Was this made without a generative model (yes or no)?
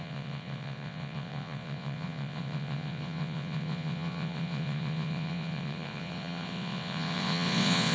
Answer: no